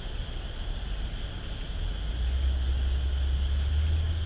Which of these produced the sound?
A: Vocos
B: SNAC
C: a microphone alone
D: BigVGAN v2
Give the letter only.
C